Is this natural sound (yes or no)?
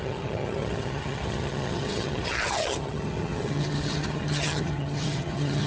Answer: no